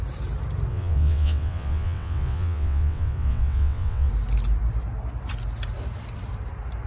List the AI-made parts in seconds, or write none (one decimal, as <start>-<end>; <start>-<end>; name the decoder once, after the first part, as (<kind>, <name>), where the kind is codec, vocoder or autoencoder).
0.7-4.1 (vocoder, WaveNeXt)